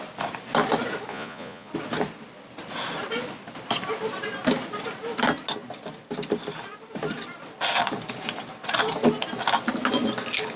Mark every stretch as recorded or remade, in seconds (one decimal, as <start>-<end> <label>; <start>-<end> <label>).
0.0-1.1 recorded; 1.1-1.7 remade; 1.7-10.6 recorded

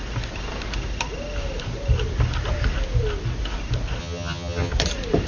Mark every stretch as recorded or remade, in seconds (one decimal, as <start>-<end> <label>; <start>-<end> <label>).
0.0-4.0 recorded; 4.0-4.7 remade; 4.7-5.3 recorded

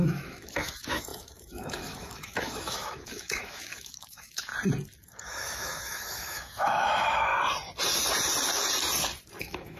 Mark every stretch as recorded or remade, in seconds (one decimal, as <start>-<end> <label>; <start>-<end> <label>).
0.0-4.5 remade; 4.5-5.0 recorded; 5.0-7.3 remade; 7.3-9.4 recorded; 9.4-9.8 remade